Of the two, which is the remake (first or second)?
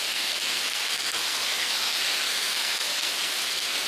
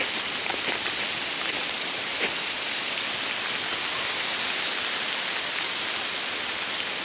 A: first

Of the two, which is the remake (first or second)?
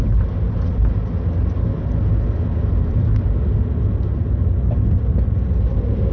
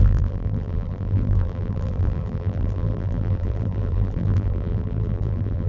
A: second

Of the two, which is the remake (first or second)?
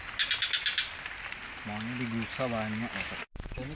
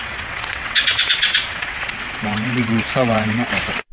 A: second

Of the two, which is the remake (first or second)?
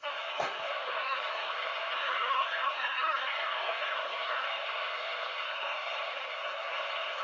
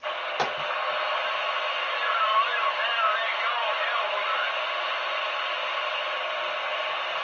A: first